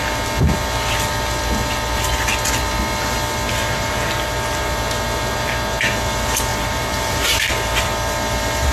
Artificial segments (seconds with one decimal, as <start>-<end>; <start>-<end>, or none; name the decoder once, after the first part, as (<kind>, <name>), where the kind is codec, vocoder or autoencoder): 6.5-7.5 (vocoder, BigVGAN v2)